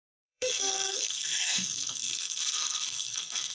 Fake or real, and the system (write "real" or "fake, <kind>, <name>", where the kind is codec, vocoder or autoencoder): fake, codec, SNAC